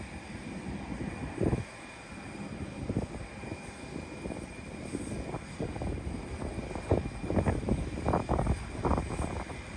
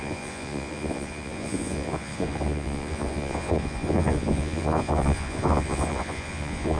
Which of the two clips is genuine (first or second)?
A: first